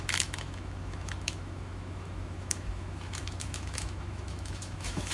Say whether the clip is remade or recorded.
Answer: remade